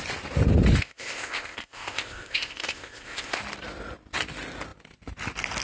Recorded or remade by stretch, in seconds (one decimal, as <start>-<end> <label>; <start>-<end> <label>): 0.0-0.8 recorded; 0.8-3.4 remade; 3.4-5.6 recorded